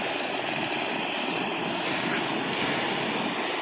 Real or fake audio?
real